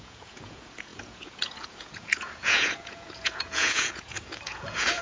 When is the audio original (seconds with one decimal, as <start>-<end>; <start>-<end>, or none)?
none